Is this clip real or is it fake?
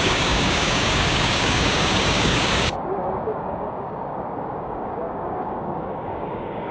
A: fake